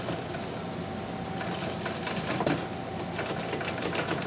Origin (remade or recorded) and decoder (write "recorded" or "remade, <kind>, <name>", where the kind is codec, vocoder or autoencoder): recorded